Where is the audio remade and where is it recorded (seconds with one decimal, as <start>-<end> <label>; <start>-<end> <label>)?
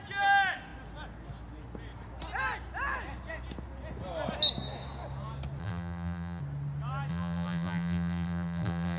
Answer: 0.0-5.6 recorded; 5.6-6.4 remade; 6.4-7.1 recorded; 7.1-9.0 remade